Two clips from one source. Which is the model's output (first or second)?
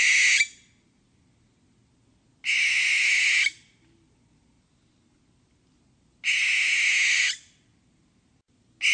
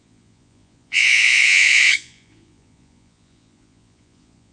second